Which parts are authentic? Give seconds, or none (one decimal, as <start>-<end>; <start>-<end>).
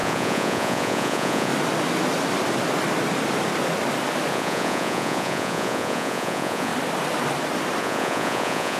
1.5-4.3; 6.7-7.8